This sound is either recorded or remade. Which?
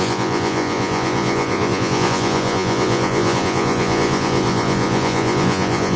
remade